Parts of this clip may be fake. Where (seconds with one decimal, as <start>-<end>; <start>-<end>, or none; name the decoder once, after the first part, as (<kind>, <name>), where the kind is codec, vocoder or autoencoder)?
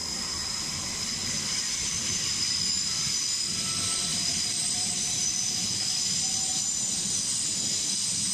4.1-4.9 (vocoder, BigVGAN v2)